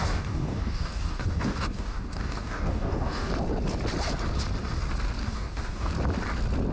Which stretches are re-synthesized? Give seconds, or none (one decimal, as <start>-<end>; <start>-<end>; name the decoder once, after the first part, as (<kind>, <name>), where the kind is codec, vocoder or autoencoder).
0.0-3.3 (codec, DAC); 5.2-5.9